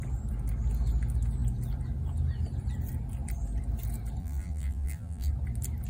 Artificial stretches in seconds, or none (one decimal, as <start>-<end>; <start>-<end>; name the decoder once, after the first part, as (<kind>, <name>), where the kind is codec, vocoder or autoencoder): 4.2-5.3 (vocoder, BigVGAN v2)